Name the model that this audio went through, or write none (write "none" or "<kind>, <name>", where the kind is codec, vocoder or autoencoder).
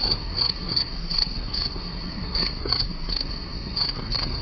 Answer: codec, SNAC